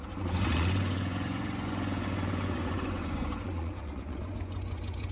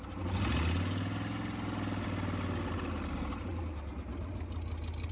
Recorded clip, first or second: second